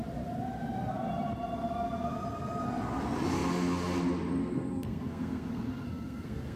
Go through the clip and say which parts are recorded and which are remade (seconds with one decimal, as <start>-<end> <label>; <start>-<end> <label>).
0.0-4.4 recorded; 4.4-6.6 remade